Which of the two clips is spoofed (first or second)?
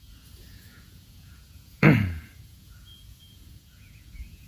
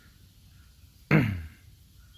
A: first